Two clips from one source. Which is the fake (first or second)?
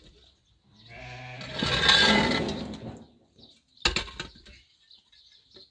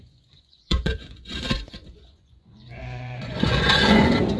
second